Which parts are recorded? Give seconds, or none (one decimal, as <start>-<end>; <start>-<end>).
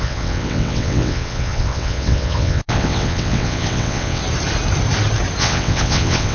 4.2-5.4